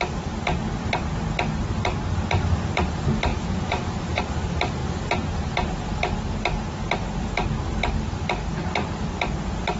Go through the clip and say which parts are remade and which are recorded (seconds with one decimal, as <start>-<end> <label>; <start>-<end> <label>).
0.0-3.3 recorded; 3.3-4.2 remade; 4.2-9.8 recorded